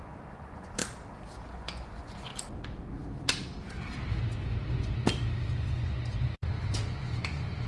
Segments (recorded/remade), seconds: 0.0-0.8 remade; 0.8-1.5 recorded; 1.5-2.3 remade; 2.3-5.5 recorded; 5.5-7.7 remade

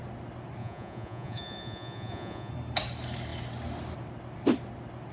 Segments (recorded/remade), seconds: 0.0-0.6 recorded; 0.6-2.5 remade; 2.5-5.1 recorded

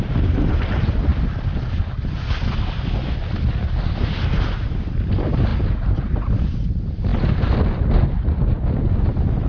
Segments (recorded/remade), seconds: 0.0-9.5 recorded